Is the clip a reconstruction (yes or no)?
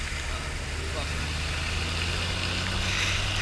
no